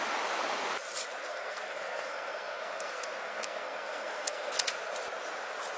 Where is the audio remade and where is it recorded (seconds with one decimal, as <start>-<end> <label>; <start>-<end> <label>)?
0.0-1.2 recorded; 1.2-4.7 remade; 4.7-5.8 recorded